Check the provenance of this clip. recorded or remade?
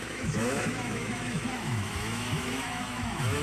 remade